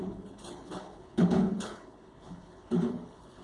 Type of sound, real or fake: fake